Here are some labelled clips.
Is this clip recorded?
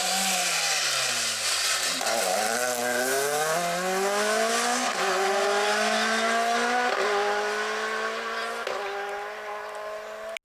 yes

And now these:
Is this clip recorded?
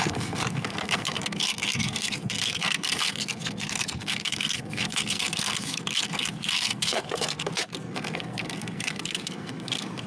no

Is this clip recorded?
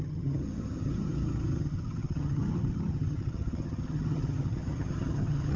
no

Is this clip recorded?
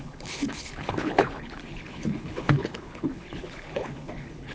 no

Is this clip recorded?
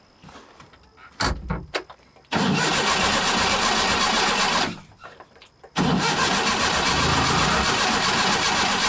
no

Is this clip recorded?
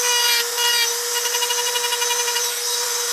yes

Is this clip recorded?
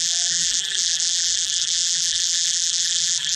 no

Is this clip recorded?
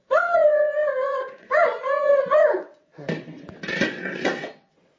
no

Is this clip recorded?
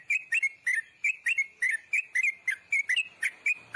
yes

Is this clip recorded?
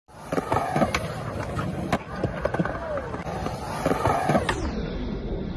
yes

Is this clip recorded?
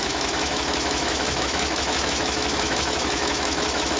no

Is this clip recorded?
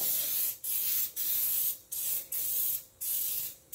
no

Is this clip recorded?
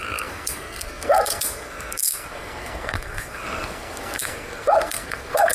no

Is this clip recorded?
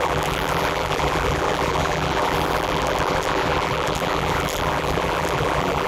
no